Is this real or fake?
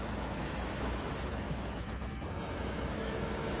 fake